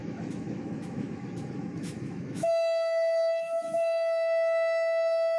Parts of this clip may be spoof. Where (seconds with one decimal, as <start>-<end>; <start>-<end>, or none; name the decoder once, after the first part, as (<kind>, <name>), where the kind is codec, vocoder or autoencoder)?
0.0-5.4 (autoencoder, DAC-VAE)